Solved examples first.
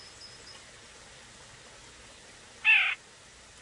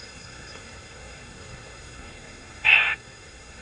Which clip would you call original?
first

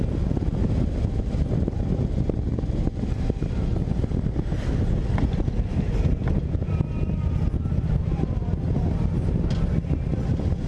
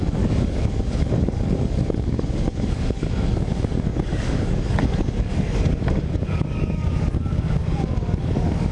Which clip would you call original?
first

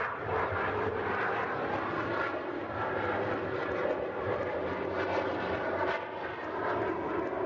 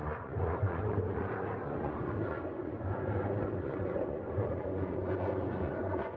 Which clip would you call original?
first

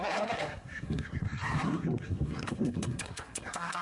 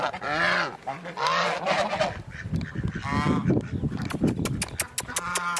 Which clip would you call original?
second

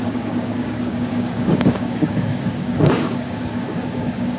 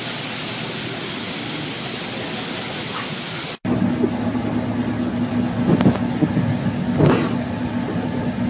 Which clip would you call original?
second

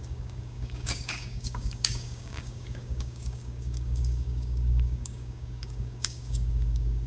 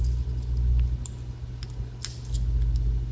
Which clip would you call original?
second